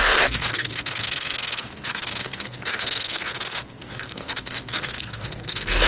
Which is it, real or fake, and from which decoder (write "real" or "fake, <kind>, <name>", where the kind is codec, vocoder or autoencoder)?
fake, codec, SNAC